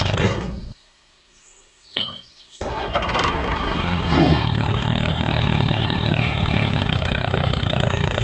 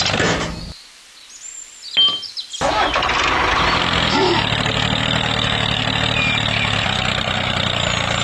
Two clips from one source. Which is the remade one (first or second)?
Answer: first